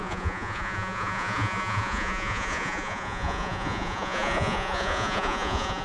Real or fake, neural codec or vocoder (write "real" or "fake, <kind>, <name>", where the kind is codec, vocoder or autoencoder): fake, vocoder, Vocos